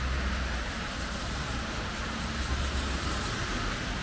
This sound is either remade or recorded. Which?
recorded